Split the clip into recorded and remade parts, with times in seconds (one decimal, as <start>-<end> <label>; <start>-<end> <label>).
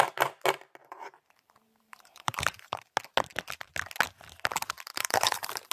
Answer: 0.0-0.8 recorded; 0.8-2.8 remade; 2.8-4.9 recorded; 4.9-5.7 remade